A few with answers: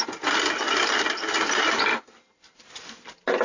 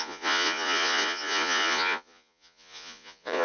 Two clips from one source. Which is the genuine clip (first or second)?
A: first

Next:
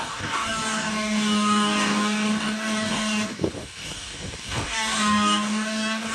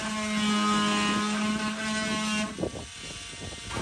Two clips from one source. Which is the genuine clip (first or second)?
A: second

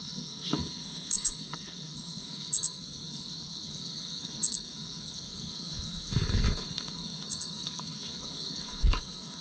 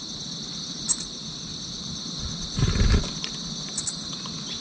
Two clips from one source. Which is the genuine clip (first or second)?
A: second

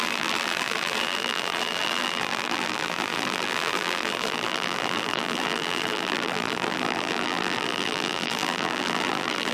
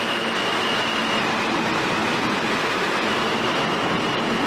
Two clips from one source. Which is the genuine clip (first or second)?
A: second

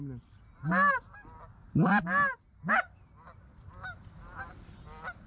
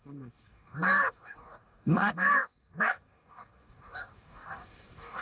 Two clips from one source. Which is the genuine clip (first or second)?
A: first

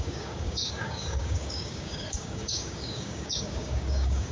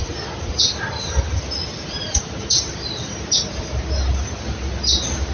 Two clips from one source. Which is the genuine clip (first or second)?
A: second